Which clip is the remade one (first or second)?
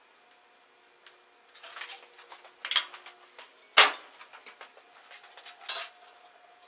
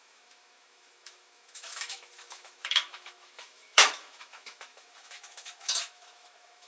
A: second